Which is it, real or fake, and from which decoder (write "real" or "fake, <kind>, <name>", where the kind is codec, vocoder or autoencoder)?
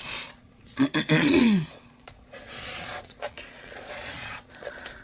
fake, vocoder, Vocos